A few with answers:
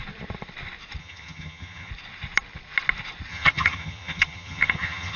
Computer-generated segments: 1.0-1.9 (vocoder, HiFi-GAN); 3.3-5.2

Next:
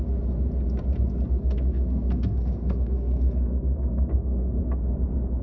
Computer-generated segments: 1.4-4.6 (codec, SNAC)

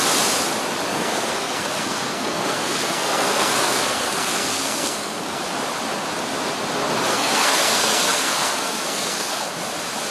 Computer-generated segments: 0.9-5.4 (codec, SNAC); 7.1-9.5

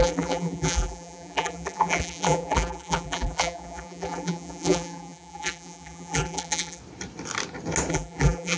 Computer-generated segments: 0.0-6.8 (vocoder, BigVGAN v2); 7.9-8.6

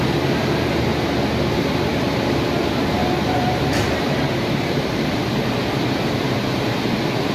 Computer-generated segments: 0.0-0.9 (vocoder, BigVGAN v2); 1.5-7.3

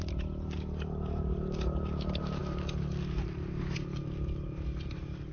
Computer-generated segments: none

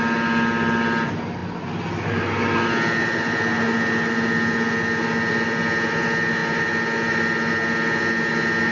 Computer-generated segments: none